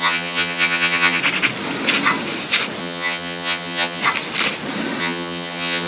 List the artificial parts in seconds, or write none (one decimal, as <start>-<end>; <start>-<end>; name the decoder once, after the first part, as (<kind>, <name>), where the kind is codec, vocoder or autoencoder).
0.0-1.2 (vocoder, HiFi-GAN); 2.8-4.0; 5.0-5.9